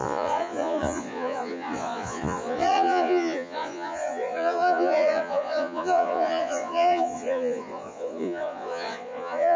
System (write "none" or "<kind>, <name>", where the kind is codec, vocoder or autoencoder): vocoder, Vocos